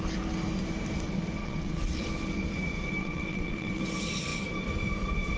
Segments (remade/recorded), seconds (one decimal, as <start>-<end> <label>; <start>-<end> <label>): 0.0-1.4 recorded; 1.4-2.0 remade; 2.0-3.0 recorded; 3.0-3.8 remade; 3.8-5.4 recorded